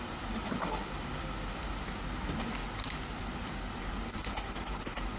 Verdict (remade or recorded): recorded